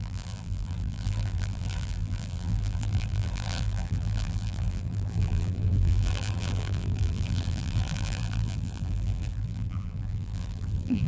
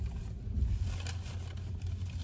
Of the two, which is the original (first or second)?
second